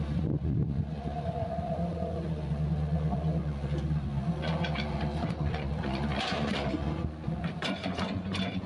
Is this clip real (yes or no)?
no